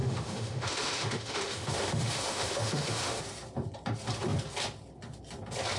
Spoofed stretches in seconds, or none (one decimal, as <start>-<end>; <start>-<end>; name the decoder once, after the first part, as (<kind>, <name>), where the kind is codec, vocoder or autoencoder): 0.0-3.2 (autoencoder, DAC-VAE)